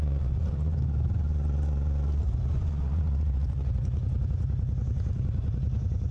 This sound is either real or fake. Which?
fake